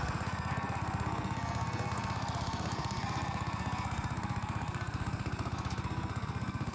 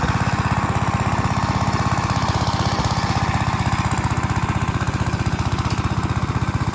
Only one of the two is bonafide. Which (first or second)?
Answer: second